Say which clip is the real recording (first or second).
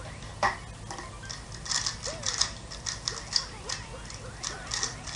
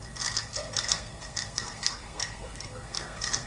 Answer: first